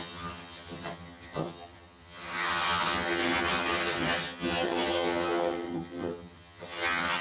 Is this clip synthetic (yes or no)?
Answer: yes